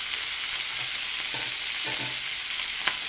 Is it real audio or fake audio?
real